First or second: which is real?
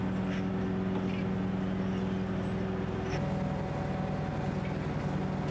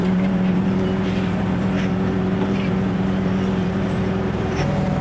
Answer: first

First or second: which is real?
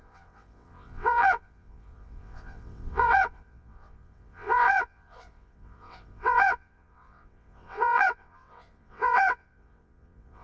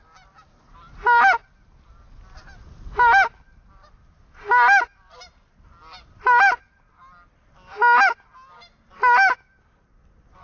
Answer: second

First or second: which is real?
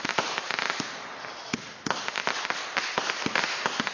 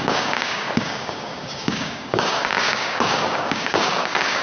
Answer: first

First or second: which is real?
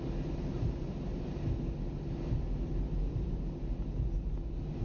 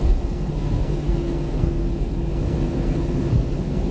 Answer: first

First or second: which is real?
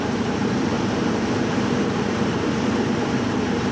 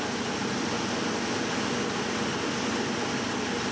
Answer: second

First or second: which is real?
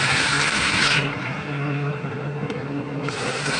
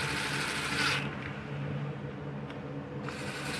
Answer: second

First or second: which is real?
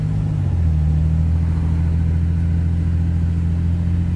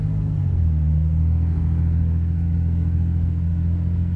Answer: first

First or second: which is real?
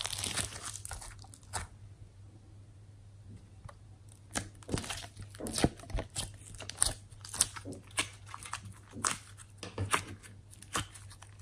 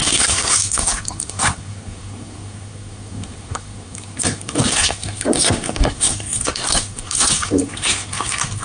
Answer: first